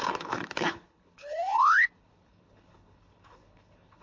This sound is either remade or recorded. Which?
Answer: remade